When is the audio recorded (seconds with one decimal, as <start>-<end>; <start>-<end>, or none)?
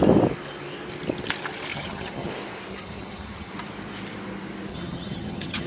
0.0-1.7; 2.3-2.7; 3.5-4.7